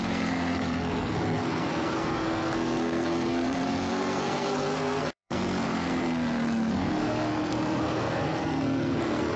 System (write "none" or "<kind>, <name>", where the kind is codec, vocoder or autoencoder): codec, SNAC